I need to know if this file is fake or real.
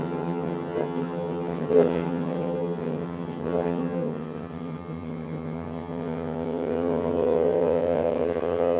fake